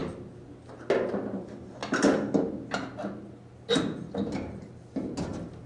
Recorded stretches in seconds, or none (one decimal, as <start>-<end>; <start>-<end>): 0.0-1.3; 1.8-5.2